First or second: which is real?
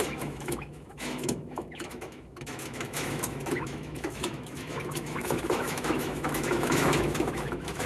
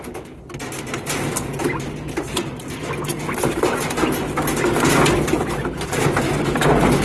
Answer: second